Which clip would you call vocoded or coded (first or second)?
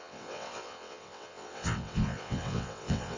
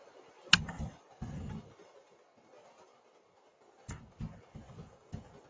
first